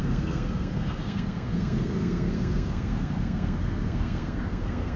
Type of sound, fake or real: fake